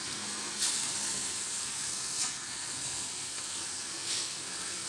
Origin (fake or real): fake